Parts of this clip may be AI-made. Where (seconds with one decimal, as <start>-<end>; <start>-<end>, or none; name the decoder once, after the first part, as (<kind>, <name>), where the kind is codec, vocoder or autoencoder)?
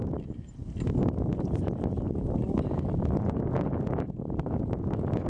none